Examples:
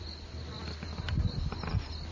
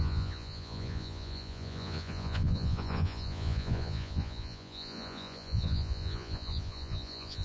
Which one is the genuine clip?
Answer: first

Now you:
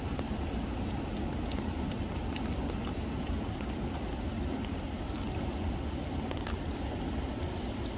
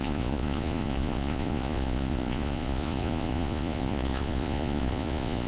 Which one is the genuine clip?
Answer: first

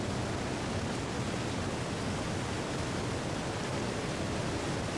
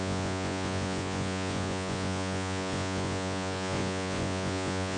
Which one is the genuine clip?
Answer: first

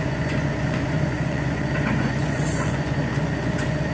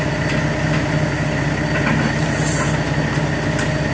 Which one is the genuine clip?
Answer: second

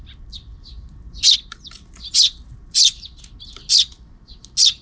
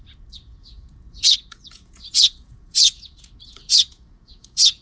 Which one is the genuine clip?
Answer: first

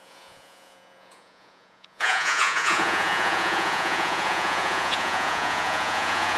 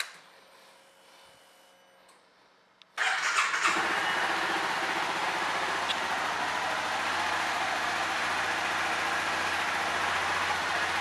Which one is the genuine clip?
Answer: second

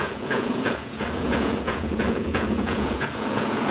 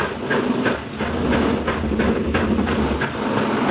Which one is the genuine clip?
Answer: second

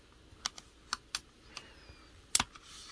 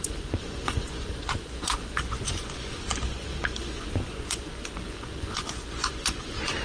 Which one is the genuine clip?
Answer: first